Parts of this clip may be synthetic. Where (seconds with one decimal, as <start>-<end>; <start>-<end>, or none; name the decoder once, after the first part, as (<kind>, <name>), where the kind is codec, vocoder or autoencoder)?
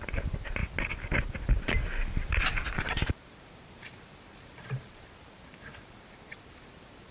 0.0-0.6 (vocoder, BigVGAN v2); 3.1-7.1